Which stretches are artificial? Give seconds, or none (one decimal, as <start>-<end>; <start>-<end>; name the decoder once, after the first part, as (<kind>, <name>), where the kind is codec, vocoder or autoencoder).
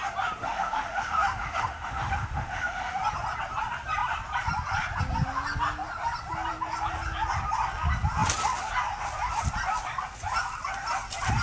0.4-3.0 (autoencoder, DAC-VAE)